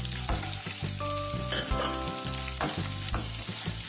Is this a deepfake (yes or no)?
no